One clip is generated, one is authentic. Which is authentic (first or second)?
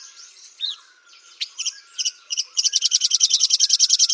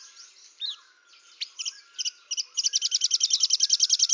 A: second